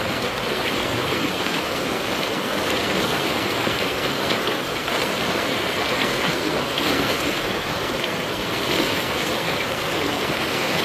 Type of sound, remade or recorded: remade